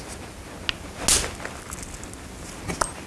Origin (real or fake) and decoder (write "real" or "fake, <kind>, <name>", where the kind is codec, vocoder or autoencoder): real